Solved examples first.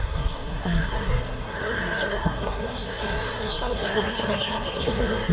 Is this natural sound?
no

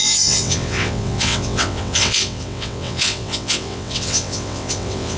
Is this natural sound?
no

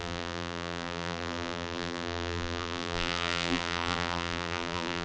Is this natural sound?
no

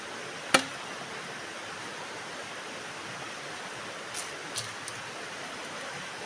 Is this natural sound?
yes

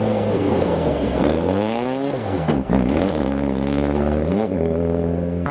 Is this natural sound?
no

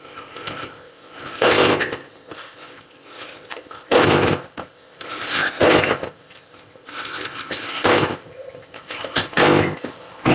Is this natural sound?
no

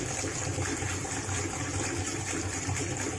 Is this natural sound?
yes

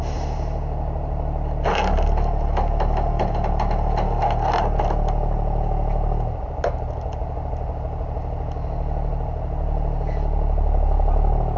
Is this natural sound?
yes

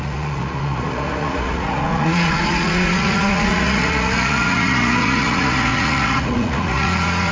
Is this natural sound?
no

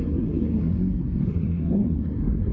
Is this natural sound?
no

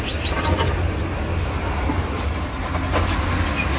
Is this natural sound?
yes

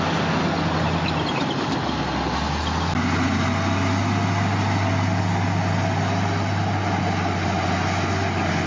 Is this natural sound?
yes